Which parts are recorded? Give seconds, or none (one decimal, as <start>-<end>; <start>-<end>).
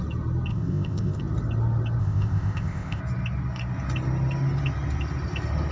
0.0-0.5; 1.2-2.0; 3.0-5.7